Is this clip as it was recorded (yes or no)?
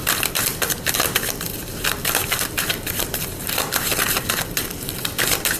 no